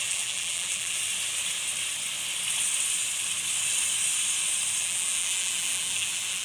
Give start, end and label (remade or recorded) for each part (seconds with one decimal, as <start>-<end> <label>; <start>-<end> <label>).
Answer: 0.0-1.0 remade; 1.0-4.8 recorded; 4.8-6.4 remade